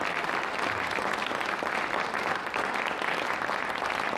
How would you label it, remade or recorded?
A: recorded